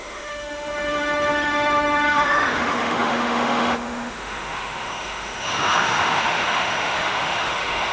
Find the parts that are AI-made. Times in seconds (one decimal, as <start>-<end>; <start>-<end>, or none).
0.0-7.9